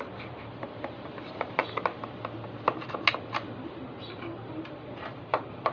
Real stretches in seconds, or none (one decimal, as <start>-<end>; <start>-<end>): 1.6-3.1